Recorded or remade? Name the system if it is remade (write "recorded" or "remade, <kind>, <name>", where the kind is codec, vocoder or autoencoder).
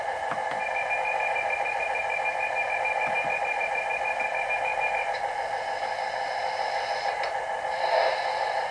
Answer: recorded